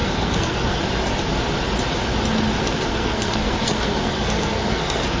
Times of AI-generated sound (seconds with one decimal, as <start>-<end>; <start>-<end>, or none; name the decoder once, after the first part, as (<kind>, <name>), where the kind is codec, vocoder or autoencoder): 0.0-0.8 (codec, SNAC); 2.6-5.2